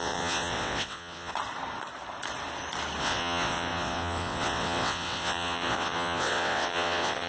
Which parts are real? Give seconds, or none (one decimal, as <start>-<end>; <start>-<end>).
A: 1.3-3.0